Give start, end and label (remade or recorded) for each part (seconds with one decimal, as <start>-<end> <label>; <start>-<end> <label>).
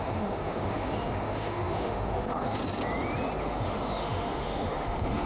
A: 0.0-2.6 remade; 2.6-3.4 recorded; 3.4-5.3 remade